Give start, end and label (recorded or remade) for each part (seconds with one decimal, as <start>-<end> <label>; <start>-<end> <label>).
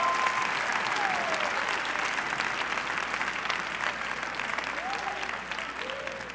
0.0-6.3 recorded